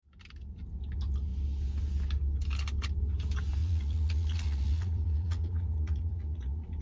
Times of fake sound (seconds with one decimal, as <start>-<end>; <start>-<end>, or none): 3.6-6.8